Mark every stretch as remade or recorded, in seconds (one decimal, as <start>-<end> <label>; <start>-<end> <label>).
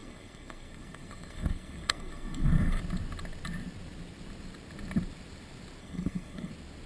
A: 0.0-2.8 remade; 2.8-5.8 recorded; 5.8-6.5 remade; 6.5-6.9 recorded